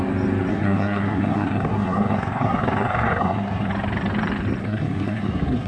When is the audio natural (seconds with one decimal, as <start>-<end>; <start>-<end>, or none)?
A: 0.0-0.5; 3.7-4.6